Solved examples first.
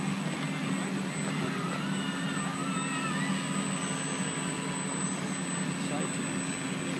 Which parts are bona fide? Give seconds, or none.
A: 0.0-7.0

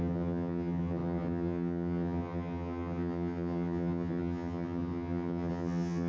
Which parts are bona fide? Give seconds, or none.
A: none

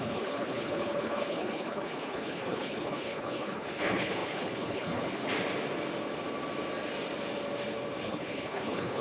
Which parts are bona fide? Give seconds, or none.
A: 5.2-8.0

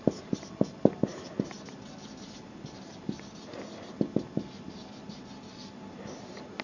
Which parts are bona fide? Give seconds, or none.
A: 0.0-6.6